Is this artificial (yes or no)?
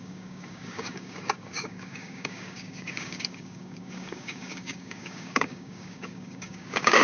yes